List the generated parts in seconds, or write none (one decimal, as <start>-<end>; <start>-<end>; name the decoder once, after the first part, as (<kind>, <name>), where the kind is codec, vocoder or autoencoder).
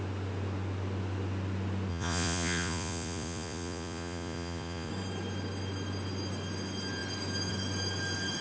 1.9-4.9 (vocoder, Vocos)